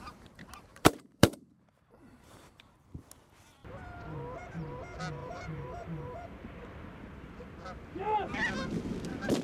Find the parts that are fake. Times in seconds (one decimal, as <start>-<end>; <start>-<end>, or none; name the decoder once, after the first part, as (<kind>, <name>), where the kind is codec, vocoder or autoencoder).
0.7-2.9 (vocoder, BigVGAN v2); 5.2-6.3